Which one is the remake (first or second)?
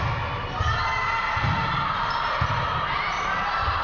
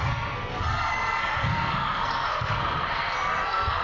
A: second